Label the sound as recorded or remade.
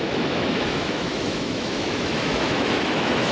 remade